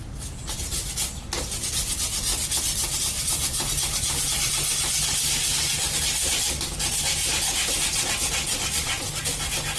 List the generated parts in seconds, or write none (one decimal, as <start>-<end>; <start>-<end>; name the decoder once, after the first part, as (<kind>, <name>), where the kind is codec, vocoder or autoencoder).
none